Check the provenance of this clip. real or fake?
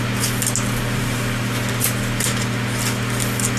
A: real